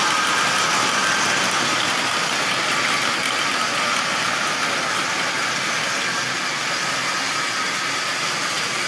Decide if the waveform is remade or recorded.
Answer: recorded